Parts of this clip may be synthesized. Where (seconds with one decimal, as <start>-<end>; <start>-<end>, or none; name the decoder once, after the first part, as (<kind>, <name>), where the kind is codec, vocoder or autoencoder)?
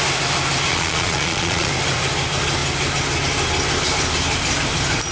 0.7-1.7 (vocoder, Vocos)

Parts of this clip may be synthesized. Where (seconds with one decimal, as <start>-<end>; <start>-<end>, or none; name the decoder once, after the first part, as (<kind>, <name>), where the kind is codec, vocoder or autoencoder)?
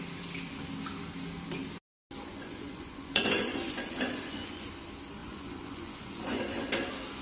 2.3-4.7 (vocoder, Vocos); 5.2-6.4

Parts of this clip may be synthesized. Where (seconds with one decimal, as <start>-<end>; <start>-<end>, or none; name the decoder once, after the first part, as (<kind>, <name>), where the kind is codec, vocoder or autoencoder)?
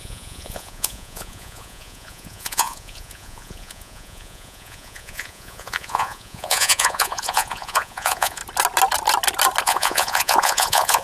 0.0-8.4 (vocoder, Vocos); 9.6-11.0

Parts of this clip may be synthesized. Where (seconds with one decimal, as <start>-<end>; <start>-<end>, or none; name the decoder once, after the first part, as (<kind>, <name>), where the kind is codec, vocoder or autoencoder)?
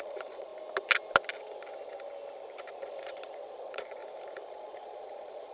0.0-0.5 (vocoder, Vocos); 2.7-4.0; 4.5-5.5